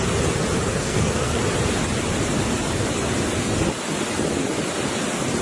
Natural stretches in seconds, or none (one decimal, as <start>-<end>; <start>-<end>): 0.0-0.8; 1.4-5.4